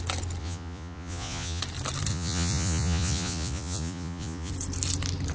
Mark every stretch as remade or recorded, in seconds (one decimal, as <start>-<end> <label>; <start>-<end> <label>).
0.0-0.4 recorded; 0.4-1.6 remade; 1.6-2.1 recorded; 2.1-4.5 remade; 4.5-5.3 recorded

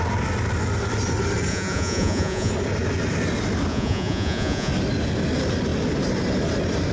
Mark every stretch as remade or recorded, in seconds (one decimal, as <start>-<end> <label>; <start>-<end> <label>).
0.0-1.5 recorded; 1.5-2.5 remade; 2.5-3.7 recorded; 3.7-4.7 remade; 4.7-6.9 recorded

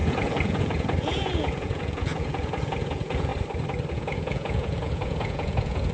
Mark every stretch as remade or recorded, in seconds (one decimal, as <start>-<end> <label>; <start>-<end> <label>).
0.0-3.3 remade; 3.3-3.9 recorded; 3.9-5.9 remade

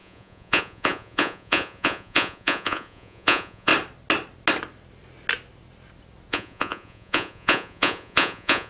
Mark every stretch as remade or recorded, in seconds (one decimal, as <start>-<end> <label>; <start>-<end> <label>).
0.0-3.7 remade; 3.7-6.3 recorded; 6.3-8.7 remade